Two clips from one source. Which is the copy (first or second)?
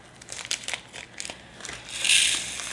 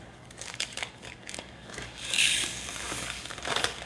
second